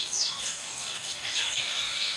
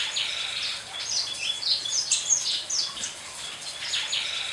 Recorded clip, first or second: second